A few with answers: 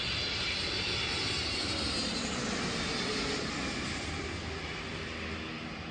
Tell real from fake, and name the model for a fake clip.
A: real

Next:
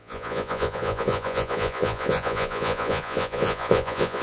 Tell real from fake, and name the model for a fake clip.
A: fake, vocoder, Vocos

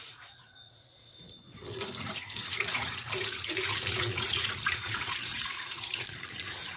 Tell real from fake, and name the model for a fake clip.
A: fake, vocoder, Vocos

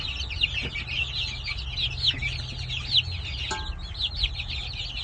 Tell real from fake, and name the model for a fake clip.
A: real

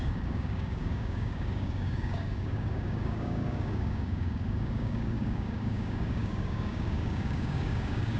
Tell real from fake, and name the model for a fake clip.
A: fake, codec, DAC